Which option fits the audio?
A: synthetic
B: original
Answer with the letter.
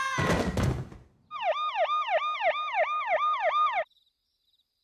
B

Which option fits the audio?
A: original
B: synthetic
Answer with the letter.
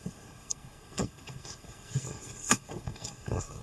B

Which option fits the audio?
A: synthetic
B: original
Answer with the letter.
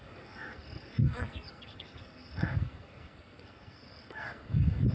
A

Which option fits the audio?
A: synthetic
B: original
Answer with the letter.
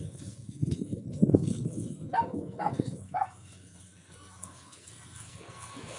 A